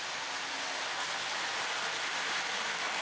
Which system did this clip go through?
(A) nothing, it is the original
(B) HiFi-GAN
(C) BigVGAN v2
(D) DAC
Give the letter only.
A